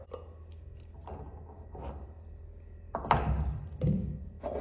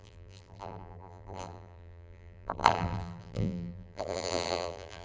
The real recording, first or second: first